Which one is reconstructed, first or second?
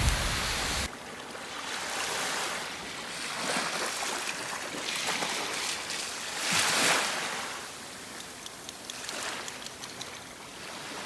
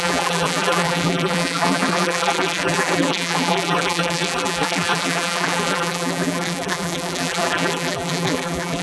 second